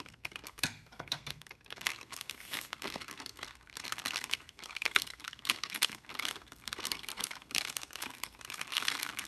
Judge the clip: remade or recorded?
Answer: remade